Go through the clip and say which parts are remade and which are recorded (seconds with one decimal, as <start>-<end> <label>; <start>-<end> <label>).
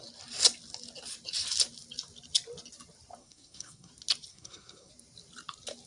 0.0-3.2 recorded; 3.2-3.9 remade; 3.9-4.3 recorded; 4.3-4.9 remade; 4.9-5.9 recorded